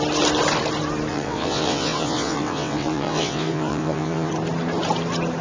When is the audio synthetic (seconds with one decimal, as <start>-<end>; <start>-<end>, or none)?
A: 1.1-4.3